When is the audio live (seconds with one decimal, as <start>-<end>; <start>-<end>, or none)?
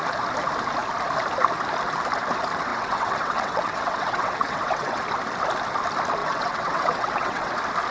0.0-2.7; 5.0-6.2; 7.5-7.9